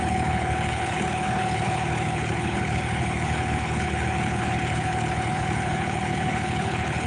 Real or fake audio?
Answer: fake